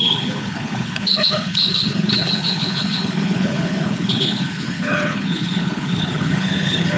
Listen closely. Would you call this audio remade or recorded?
remade